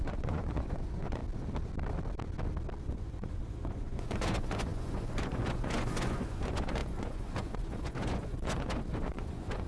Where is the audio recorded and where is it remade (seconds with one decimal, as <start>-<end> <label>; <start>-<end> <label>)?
0.0-1.2 remade; 1.2-2.8 recorded; 2.8-9.7 remade